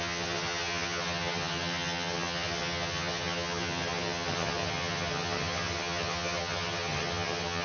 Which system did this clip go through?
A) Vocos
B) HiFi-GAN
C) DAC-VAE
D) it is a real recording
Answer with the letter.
B